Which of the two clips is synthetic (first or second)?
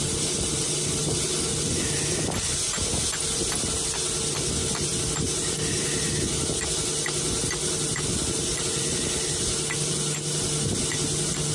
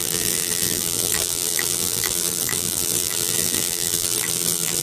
second